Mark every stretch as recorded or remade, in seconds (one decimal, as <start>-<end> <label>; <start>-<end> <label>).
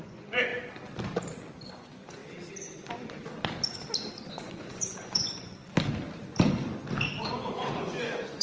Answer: 0.0-0.5 remade; 0.5-1.7 recorded; 1.7-2.2 remade; 2.2-4.3 recorded; 4.3-5.6 remade; 5.6-7.2 recorded; 7.2-8.4 remade